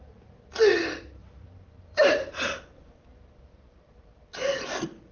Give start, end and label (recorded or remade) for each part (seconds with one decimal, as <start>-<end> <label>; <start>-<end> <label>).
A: 0.0-1.2 recorded; 1.2-4.3 remade; 4.3-5.1 recorded